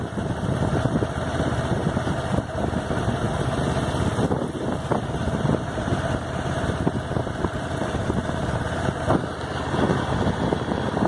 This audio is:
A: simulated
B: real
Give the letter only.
B